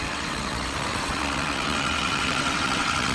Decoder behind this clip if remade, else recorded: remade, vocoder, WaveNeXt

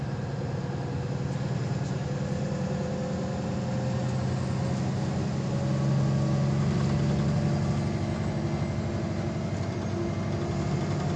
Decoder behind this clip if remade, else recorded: recorded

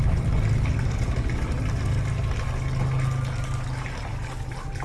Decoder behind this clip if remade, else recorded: recorded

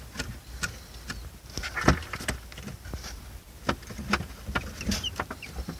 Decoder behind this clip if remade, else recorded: recorded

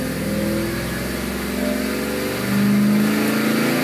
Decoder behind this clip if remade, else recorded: recorded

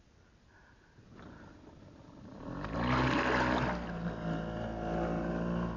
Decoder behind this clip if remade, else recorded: recorded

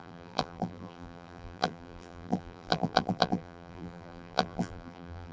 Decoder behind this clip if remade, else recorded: remade, vocoder, BigVGAN v2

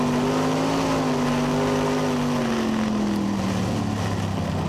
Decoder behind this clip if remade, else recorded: recorded